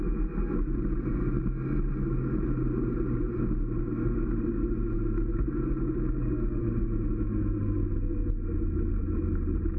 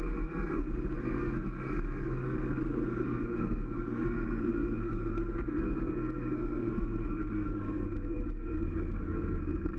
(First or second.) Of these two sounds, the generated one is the second